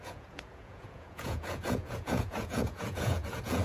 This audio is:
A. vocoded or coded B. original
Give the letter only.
A